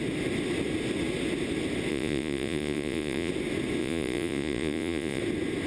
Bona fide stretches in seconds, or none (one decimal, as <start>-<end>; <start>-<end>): 0.0-1.9; 3.3-3.8; 5.2-5.7

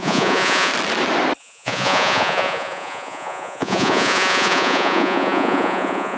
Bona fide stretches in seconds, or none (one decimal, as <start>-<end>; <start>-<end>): 0.7-1.4

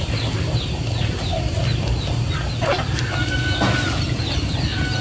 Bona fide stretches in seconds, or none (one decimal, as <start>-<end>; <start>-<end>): 0.0-5.0

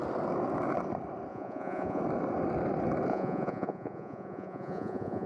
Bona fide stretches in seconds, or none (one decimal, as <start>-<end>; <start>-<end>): 0.0-1.3; 2.0-3.1

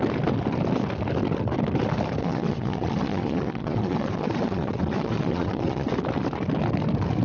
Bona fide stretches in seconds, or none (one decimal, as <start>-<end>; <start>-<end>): 0.0-2.2; 5.9-7.2

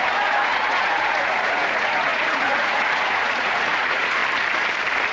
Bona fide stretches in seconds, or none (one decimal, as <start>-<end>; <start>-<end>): 4.2-5.1

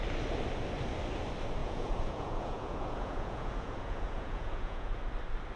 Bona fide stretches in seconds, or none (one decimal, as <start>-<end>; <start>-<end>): 0.0-1.6; 5.0-5.6